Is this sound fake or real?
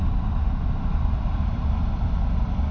real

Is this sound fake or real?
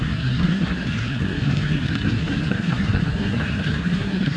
fake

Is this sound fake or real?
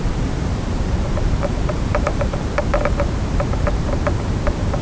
fake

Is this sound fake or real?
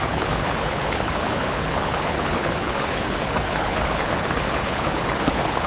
fake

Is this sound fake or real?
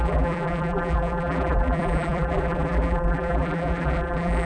fake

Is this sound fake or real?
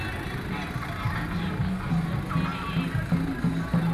real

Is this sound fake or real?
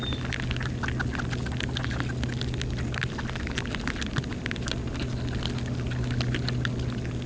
real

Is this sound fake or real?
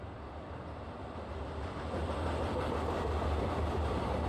real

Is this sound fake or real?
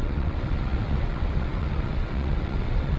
fake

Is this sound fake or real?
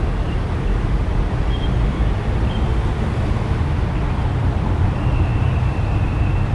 fake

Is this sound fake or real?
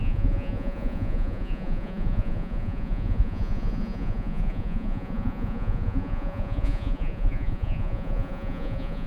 fake